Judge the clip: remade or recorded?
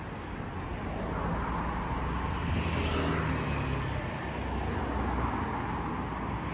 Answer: recorded